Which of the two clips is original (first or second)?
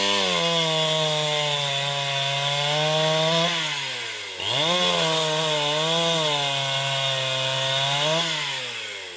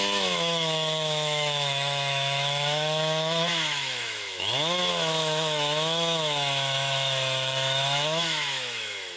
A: first